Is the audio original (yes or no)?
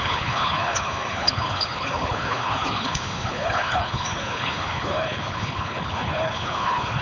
no